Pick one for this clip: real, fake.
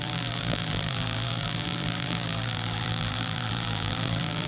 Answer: fake